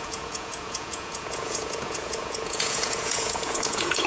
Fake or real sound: fake